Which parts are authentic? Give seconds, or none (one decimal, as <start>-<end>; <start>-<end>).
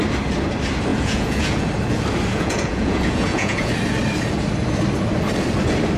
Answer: 0.0-0.9; 1.7-2.3; 3.7-6.0